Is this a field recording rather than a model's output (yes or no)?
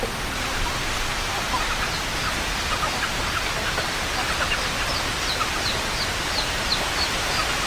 yes